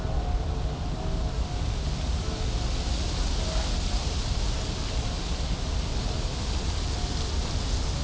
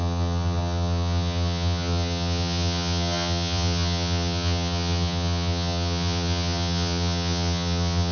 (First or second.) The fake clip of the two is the second